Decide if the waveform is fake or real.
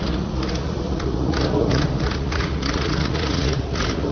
fake